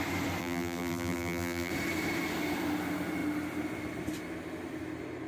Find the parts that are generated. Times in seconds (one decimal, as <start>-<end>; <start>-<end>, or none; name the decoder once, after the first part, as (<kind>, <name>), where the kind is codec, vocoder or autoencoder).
0.4-1.7 (vocoder, BigVGAN v2)